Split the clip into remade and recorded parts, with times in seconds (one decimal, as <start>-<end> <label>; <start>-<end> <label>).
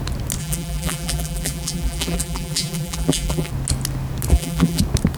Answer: 0.0-0.4 recorded; 0.4-3.5 remade; 3.5-4.3 recorded; 4.3-4.8 remade; 4.8-5.2 recorded